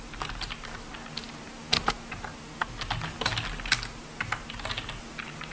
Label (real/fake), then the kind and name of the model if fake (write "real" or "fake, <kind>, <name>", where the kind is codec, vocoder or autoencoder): real